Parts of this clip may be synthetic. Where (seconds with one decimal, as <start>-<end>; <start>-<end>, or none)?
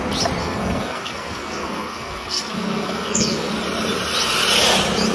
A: 0.4-3.5